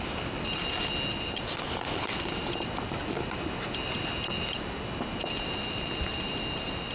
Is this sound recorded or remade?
recorded